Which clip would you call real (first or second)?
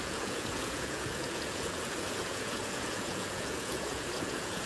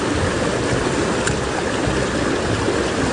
second